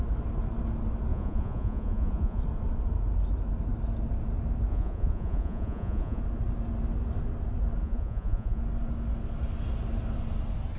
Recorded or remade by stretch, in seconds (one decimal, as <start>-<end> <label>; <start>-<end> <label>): 0.0-1.1 recorded; 1.1-2.4 remade; 2.4-4.7 recorded; 4.7-6.2 remade; 6.2-7.8 recorded; 7.8-8.6 remade; 8.6-10.8 recorded

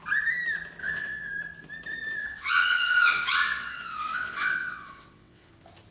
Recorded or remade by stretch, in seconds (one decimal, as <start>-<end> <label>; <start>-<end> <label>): 0.0-0.8 recorded; 0.8-1.3 remade; 1.3-2.2 recorded; 2.2-5.5 remade; 5.5-5.9 recorded

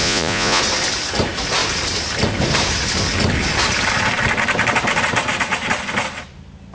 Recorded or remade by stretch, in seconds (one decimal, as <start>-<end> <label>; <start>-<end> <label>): 0.0-0.6 remade; 0.6-6.7 recorded

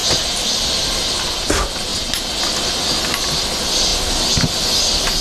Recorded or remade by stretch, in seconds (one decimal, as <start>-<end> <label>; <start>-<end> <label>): 0.0-5.2 recorded